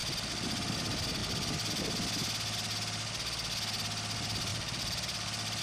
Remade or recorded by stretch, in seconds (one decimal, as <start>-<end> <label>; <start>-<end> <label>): 0.0-0.7 remade; 0.7-1.2 recorded; 1.2-1.8 remade; 1.8-4.5 recorded; 4.5-5.6 remade

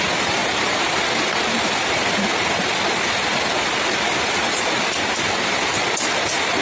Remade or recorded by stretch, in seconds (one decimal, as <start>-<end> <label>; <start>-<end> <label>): 0.0-0.4 recorded; 0.4-1.0 remade; 1.0-6.6 recorded

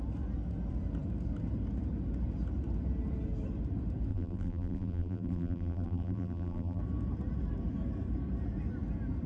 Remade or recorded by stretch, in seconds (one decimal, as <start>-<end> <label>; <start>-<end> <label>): 0.0-4.1 recorded; 4.1-6.8 remade; 6.8-9.3 recorded

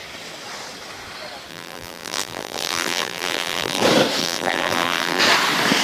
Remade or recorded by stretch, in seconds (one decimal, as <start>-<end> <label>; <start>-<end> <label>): 0.0-1.5 recorded; 1.5-3.8 remade; 3.8-4.2 recorded; 4.2-5.2 remade; 5.2-5.8 recorded

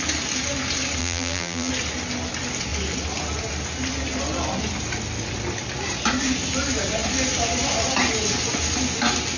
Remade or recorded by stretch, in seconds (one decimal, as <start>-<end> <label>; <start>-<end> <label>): 0.0-1.0 recorded; 1.0-1.7 remade; 1.7-9.4 recorded

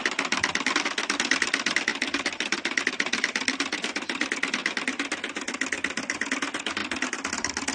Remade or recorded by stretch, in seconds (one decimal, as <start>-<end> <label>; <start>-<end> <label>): 0.0-4.6 remade; 4.6-6.3 recorded; 6.3-6.8 remade; 6.8-7.3 recorded; 7.3-7.7 remade

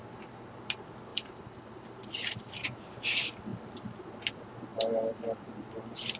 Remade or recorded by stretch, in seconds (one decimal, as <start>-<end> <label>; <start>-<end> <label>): 0.0-1.1 recorded; 1.1-2.5 remade; 2.5-4.7 recorded; 4.7-5.5 remade; 5.5-6.2 recorded

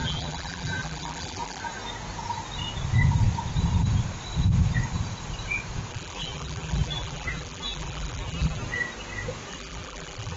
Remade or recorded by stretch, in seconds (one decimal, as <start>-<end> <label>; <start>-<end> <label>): 0.0-1.6 remade; 1.6-5.9 recorded; 5.9-8.6 remade; 8.6-9.5 recorded; 9.5-10.4 remade